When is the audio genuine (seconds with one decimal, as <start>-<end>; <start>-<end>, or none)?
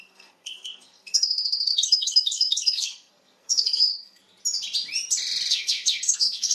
4.2-5.5